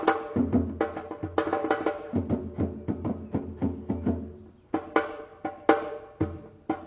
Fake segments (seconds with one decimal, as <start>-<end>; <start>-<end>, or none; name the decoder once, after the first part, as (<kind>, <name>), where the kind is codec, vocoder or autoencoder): 1.6-2.2 (vocoder, BigVGAN v2)